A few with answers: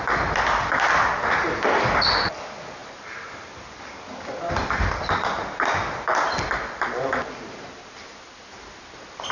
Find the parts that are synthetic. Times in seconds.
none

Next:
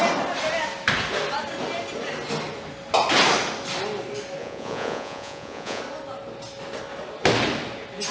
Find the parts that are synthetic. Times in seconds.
4.4-5.8

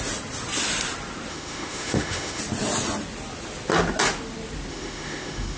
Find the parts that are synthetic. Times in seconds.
1.3-2.4; 4.7-5.6